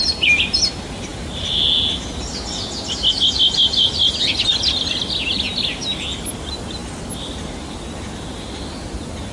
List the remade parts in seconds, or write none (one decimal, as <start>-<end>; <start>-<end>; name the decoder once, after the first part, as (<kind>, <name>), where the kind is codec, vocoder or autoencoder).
none

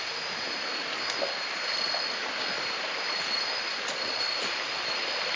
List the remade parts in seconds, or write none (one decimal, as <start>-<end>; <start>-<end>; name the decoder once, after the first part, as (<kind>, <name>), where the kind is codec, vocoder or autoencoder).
none